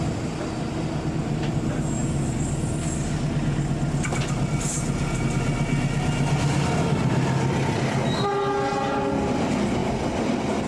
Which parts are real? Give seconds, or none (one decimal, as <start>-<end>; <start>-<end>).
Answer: 0.0-10.7